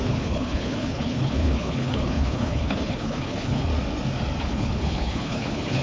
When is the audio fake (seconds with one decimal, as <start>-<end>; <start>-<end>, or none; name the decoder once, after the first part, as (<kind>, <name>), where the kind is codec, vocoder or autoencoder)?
0.0-3.7 (codec, HILCodec); 4.4-5.8